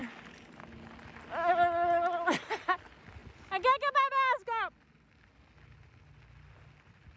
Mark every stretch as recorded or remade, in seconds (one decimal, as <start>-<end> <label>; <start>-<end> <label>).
0.0-7.2 recorded